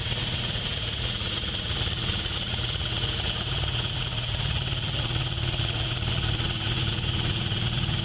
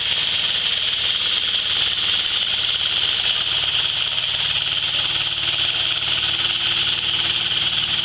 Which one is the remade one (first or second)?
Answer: first